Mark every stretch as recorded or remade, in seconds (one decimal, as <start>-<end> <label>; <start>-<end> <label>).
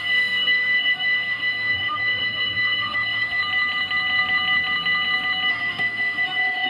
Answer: 0.0-3.4 remade; 3.4-5.5 recorded; 5.5-6.7 remade